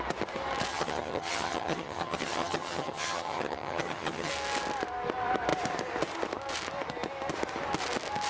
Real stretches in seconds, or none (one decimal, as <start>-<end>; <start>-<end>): 0.0-0.7; 4.3-8.3